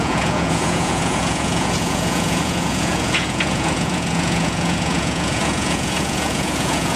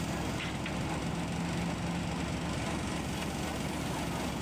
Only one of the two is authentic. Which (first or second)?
second